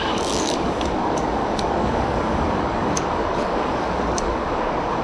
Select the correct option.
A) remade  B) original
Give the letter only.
A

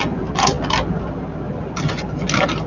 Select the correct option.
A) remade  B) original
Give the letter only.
B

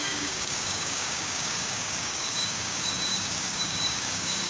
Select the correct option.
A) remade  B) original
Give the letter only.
A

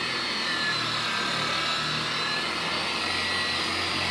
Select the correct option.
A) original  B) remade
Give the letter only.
A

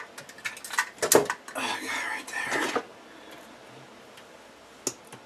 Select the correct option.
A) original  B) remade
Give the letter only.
A